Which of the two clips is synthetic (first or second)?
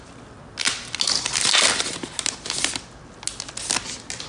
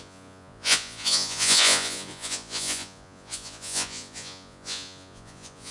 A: second